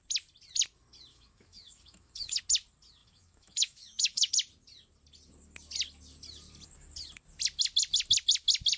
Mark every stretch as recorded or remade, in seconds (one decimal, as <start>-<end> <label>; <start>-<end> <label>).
0.0-1.1 recorded; 1.1-2.4 remade; 2.4-3.0 recorded; 3.0-4.3 remade; 4.3-8.8 recorded